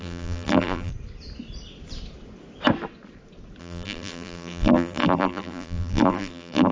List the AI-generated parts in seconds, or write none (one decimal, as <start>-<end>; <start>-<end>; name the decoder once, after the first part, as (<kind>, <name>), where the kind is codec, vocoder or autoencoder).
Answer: 0.0-0.9 (vocoder, BigVGAN v2); 3.6-6.7